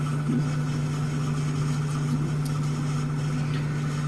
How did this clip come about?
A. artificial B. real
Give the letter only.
B